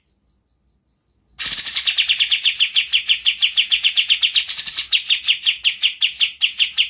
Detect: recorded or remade recorded